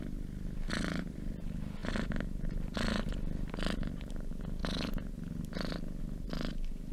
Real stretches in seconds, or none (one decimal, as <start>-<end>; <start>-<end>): 0.0-1.8; 3.5-6.9